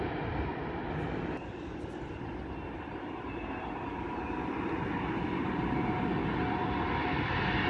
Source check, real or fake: real